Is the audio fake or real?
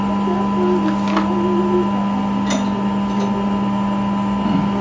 real